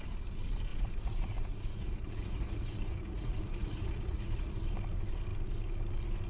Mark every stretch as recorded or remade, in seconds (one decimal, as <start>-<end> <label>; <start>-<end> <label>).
0.0-0.7 recorded; 0.7-4.5 remade; 4.5-6.3 recorded